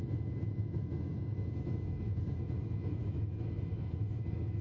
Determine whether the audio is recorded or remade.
remade